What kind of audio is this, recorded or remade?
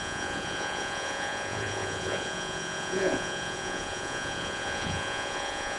remade